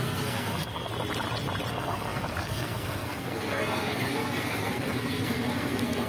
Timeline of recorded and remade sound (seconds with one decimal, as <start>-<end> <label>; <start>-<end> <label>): 0.0-0.9 remade; 0.9-1.7 recorded; 1.7-6.1 remade